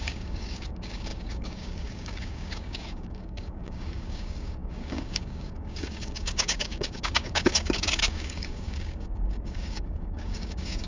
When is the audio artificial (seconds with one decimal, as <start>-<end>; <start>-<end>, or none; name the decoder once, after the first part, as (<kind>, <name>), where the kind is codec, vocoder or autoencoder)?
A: 0.0-10.9 (codec, DAC)